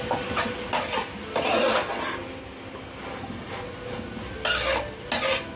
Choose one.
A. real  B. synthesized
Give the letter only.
A